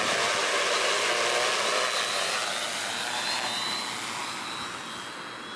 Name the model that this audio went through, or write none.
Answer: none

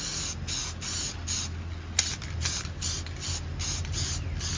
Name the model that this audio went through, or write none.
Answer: none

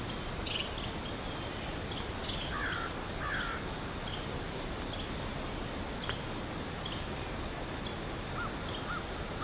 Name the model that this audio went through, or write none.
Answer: none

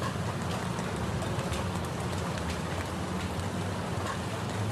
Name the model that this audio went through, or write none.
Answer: none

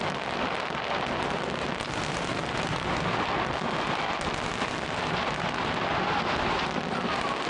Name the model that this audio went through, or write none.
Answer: none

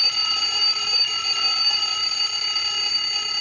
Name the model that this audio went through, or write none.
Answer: vocoder, BigVGAN v2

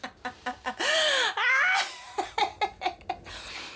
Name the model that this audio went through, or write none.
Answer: none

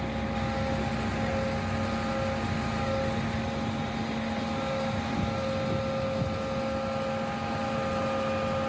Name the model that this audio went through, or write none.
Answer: none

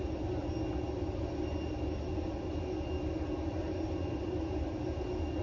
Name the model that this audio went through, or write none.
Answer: none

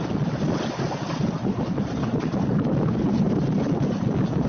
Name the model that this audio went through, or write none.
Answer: none